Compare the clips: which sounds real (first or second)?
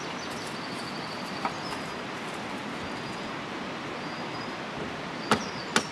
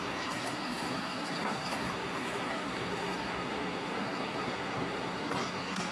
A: first